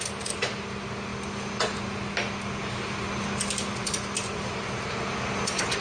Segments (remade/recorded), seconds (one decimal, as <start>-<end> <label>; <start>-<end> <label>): 0.0-5.8 recorded